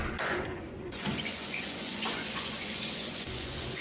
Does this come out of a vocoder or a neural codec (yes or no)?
yes